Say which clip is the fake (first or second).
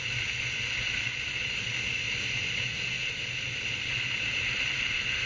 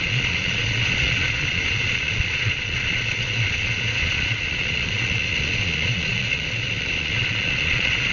second